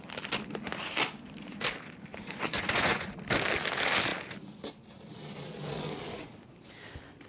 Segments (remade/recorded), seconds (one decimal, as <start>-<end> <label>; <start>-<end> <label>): 0.0-2.1 recorded; 2.1-3.2 remade; 3.2-7.3 recorded